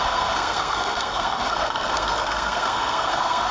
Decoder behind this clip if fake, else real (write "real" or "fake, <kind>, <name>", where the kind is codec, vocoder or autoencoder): fake, codec, SNAC